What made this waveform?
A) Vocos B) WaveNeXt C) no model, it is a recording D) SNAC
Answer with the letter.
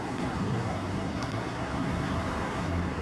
D